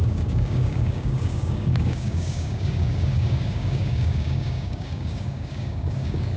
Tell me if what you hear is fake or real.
fake